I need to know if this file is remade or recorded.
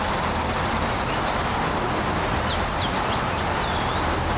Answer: recorded